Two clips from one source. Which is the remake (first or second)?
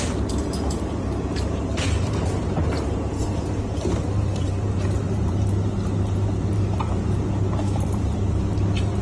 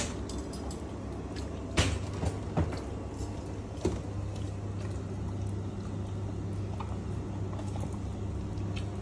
first